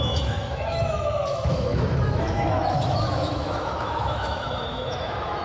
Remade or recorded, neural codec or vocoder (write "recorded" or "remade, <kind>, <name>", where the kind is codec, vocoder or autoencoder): remade, autoencoder, DAC-VAE